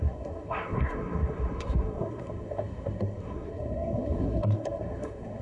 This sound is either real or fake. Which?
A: fake